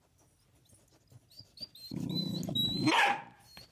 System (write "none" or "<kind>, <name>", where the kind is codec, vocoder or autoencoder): none